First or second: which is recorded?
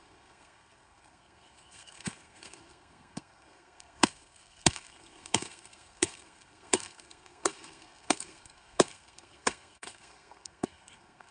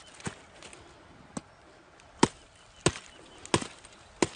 second